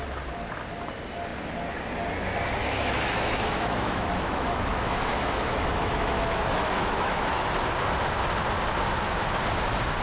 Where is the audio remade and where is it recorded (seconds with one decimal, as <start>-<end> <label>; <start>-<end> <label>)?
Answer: 0.0-2.6 recorded; 2.6-7.5 remade; 7.5-10.0 recorded

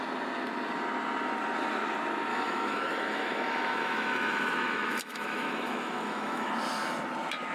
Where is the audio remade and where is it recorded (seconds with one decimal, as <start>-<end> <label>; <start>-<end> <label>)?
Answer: 0.0-2.3 recorded; 2.3-6.5 remade; 6.5-7.5 recorded

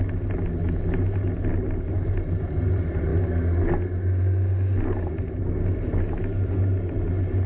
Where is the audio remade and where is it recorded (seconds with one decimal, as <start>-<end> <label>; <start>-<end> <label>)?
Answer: 0.0-7.5 recorded

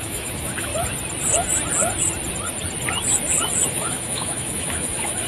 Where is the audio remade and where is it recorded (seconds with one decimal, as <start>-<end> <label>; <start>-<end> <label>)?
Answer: 0.0-0.7 remade; 0.7-3.7 recorded; 3.7-5.3 remade

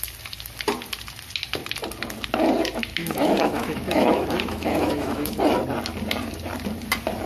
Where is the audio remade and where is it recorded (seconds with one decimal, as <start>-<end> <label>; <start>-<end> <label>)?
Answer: 0.0-3.0 recorded; 3.0-5.4 remade; 5.4-7.3 recorded

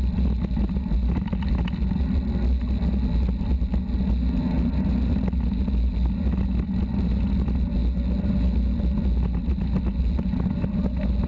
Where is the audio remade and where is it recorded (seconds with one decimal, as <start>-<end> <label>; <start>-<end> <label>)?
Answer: 0.0-11.3 recorded

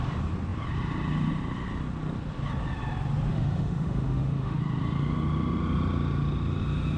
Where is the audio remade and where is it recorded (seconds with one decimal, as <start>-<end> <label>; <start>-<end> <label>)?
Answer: 0.0-3.3 recorded; 3.3-4.6 remade; 4.6-7.0 recorded